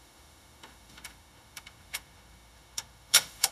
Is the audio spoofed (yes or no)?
yes